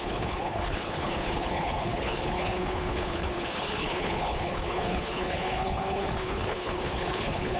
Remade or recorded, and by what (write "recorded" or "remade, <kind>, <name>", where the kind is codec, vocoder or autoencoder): remade, codec, HILCodec